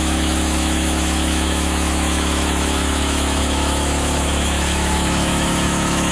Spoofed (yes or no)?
yes